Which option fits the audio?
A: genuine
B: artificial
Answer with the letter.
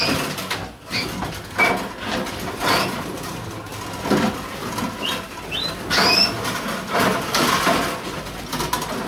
A